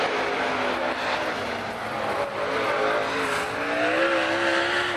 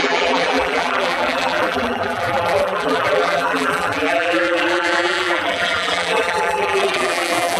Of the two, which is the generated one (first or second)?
second